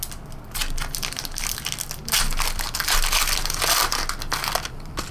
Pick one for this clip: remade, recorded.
recorded